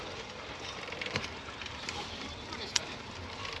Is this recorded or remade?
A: remade